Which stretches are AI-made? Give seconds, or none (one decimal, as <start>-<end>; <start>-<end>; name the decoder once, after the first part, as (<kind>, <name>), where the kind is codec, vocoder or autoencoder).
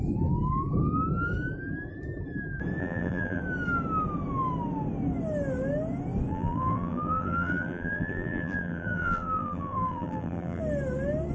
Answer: 2.8-3.4 (vocoder, BigVGAN v2); 6.3-10.6